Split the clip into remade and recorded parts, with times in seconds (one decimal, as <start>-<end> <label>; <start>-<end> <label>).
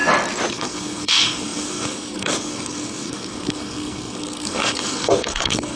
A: 0.0-0.5 recorded; 0.5-5.8 remade